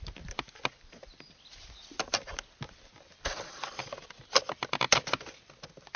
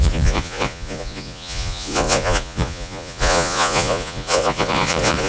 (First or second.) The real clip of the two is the first